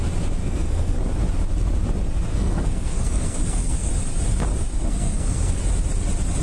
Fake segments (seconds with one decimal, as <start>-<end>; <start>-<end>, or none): 0.4-1.0; 2.3-3.9; 4.7-5.6